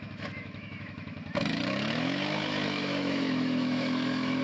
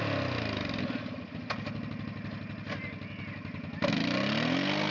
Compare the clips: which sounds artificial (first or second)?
first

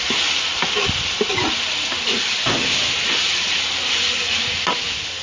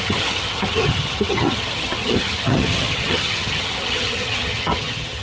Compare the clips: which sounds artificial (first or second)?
second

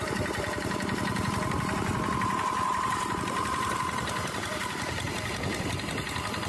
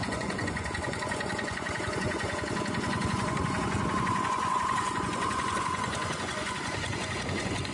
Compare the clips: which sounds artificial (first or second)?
second